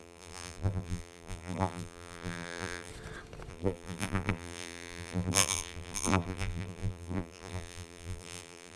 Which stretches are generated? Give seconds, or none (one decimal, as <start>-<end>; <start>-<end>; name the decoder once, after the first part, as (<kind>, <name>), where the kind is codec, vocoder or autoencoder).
0.0-2.9 (vocoder, BigVGAN v2); 3.5-8.8